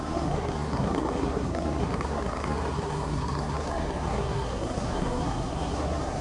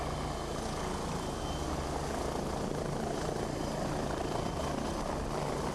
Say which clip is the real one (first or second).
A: second